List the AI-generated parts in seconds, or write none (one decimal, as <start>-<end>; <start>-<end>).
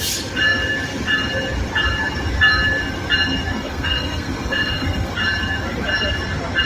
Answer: 3.5-5.1